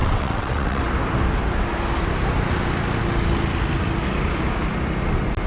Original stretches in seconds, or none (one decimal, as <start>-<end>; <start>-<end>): 0.8-5.5